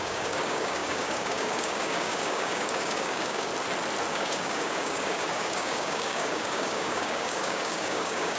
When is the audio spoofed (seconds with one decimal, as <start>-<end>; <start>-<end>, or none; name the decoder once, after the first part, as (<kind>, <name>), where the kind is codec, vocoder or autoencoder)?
0.0-3.5 (codec, DAC); 4.1-8.4